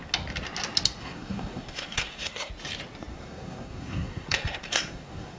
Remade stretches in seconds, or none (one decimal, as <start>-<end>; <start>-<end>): 1.0-2.5; 3.1-5.4